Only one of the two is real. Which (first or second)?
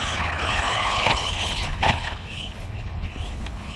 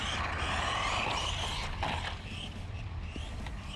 second